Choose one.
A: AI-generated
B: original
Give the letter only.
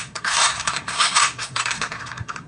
A